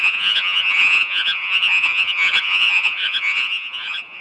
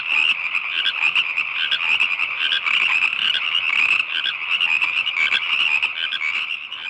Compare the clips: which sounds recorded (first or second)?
second